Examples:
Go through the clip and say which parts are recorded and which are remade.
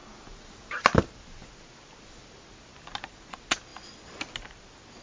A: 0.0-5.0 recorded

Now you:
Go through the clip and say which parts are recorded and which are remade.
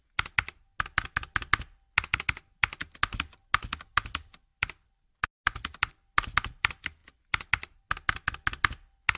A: 0.0-9.2 recorded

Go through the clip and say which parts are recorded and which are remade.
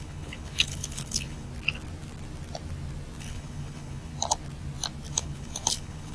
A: 0.0-1.5 remade; 1.5-3.2 recorded; 3.2-4.1 remade; 4.1-5.1 recorded; 5.1-6.1 remade